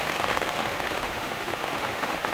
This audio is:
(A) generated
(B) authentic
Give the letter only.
A